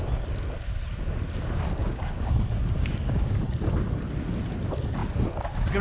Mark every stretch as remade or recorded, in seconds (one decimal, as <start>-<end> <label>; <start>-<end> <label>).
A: 0.0-1.8 recorded; 1.8-3.4 remade; 3.4-5.8 recorded